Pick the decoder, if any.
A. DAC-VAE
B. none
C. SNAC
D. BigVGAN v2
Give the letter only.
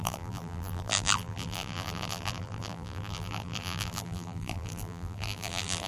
D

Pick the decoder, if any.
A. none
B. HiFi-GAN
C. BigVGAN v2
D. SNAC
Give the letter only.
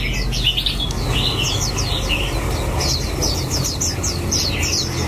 A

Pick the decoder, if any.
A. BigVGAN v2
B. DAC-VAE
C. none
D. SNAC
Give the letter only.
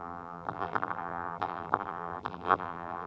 A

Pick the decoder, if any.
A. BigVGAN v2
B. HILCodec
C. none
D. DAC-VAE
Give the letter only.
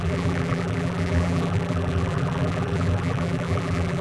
A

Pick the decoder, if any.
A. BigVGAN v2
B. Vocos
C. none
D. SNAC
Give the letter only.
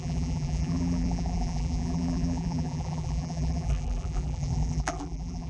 A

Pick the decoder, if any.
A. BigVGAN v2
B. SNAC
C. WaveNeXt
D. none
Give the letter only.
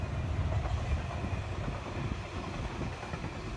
D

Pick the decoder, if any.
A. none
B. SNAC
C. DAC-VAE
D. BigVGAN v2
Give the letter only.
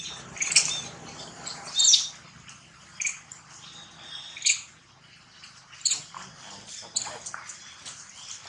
A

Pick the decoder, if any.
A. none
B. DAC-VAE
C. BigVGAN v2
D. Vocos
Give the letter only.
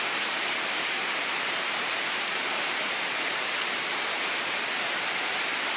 C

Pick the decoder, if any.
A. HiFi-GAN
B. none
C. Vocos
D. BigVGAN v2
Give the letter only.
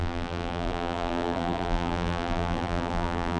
D